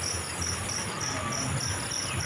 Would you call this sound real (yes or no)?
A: yes